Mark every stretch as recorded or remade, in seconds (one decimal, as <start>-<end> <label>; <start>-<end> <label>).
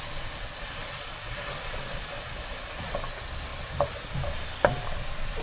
0.0-1.1 recorded; 1.1-2.0 remade; 2.0-5.4 recorded